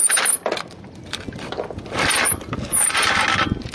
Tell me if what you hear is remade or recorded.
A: recorded